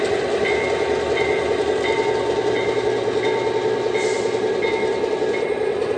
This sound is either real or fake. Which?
real